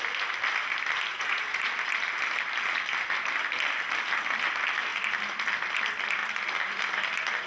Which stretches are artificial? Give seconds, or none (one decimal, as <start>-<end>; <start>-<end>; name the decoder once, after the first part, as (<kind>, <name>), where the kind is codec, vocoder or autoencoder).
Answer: 1.1-1.7 (vocoder, Vocos)